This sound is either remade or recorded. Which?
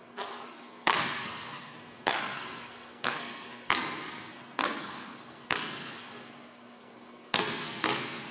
remade